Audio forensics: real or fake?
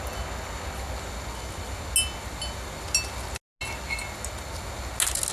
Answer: real